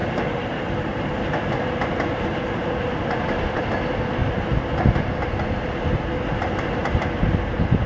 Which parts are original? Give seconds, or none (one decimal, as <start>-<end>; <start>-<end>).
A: 3.6-6.8; 7.5-7.9